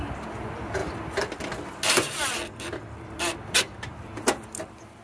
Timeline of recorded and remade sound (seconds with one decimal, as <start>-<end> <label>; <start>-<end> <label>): 0.0-0.8 recorded; 0.8-1.5 remade; 1.5-2.4 recorded; 2.4-4.3 remade; 4.3-5.0 recorded